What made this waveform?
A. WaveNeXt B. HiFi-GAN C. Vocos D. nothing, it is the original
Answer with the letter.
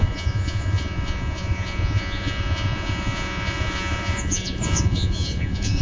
C